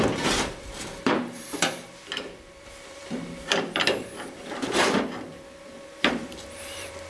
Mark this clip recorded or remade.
remade